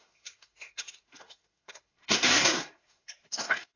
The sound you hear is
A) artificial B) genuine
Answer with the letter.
A